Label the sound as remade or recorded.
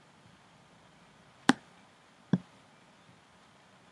recorded